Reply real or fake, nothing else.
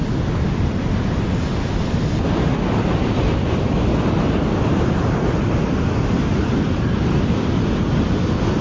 real